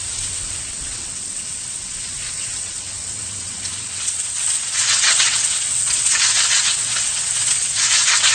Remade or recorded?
remade